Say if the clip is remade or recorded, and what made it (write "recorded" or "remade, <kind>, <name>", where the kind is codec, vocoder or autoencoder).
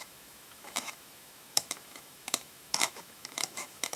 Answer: remade, autoencoder, DAC-VAE